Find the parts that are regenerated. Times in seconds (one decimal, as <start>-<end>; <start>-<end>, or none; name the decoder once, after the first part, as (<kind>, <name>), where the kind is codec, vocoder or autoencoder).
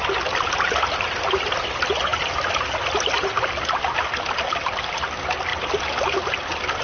none